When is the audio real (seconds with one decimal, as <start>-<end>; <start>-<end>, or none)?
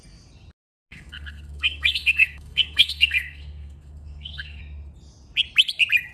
0.0-0.9; 4.6-6.1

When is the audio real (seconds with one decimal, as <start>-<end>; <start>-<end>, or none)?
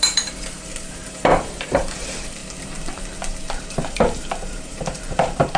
2.4-3.7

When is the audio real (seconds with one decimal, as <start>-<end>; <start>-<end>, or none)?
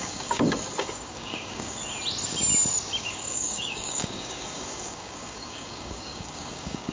1.8-3.0